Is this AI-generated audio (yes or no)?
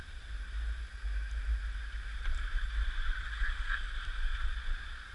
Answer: no